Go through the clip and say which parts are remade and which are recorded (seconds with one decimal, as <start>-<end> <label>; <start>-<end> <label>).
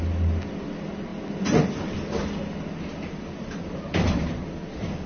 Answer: 0.0-5.1 recorded